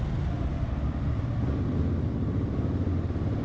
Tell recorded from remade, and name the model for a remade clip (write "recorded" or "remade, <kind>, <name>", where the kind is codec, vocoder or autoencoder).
recorded